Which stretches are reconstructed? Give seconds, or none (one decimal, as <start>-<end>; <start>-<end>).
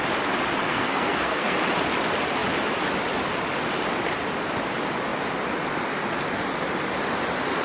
0.6-1.6